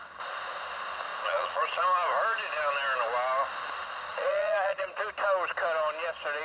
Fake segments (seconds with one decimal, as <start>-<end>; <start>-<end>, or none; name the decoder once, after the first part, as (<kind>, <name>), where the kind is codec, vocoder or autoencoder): 1.1-1.8 (vocoder, Vocos); 4.1-5.0